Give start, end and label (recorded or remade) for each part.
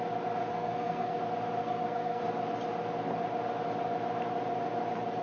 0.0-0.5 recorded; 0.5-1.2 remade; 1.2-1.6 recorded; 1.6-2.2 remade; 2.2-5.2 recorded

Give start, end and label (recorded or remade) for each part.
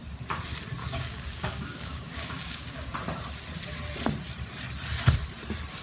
0.0-0.8 recorded; 0.8-2.9 remade; 2.9-5.8 recorded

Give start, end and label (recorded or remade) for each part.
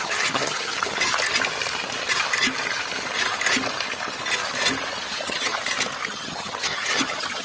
0.0-0.7 remade; 0.7-5.1 recorded; 5.1-5.6 remade; 5.6-6.1 recorded; 6.1-7.4 remade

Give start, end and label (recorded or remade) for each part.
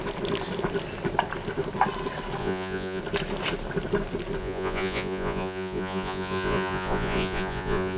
0.0-2.4 recorded; 2.4-3.0 remade; 3.0-4.4 recorded; 4.4-8.0 remade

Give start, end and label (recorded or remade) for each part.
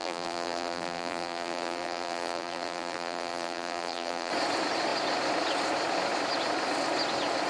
0.0-4.3 remade; 4.3-7.5 recorded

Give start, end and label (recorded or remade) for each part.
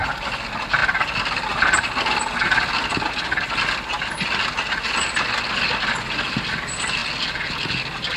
0.0-8.2 recorded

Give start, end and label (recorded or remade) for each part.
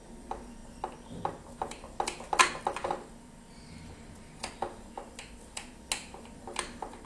0.0-7.1 recorded